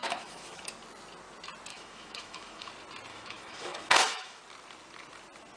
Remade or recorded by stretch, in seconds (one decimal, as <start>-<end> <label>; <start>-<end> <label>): 0.0-0.7 remade; 0.7-1.7 recorded; 1.7-2.7 remade; 2.7-3.1 recorded; 3.1-4.4 remade; 4.4-5.6 recorded